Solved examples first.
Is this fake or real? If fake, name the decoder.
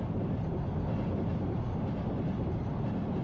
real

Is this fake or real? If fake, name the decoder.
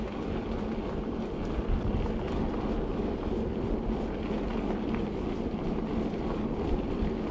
real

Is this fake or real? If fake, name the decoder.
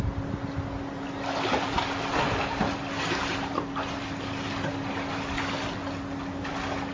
real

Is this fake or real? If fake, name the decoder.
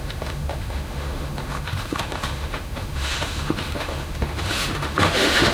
fake, autoencoder, DAC-VAE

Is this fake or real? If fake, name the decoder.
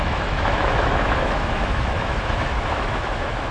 fake, autoencoder, DAC-VAE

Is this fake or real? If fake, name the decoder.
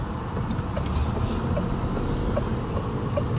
real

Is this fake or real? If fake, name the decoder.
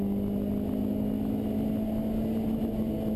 real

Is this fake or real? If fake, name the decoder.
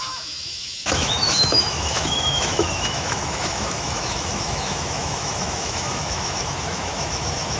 fake, autoencoder, DAC-VAE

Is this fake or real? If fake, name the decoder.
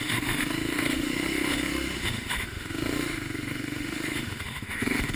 fake, autoencoder, DAC-VAE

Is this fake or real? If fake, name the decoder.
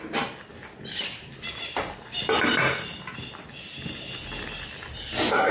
real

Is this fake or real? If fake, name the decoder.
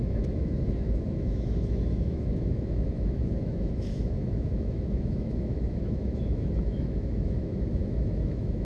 fake, autoencoder, DAC-VAE